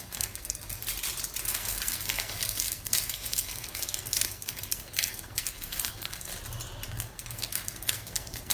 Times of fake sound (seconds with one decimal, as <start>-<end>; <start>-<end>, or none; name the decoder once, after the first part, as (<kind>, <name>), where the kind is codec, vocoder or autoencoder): 0.0-0.8 (codec, SNAC); 1.4-6.3; 6.9-8.5